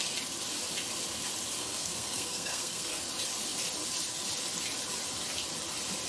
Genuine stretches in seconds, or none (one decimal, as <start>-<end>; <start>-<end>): 0.0-1.6; 3.0-6.1